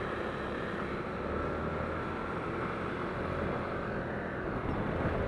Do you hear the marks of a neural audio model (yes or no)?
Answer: no